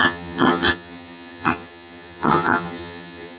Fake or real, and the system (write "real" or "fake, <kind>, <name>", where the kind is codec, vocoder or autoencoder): fake, vocoder, HiFi-GAN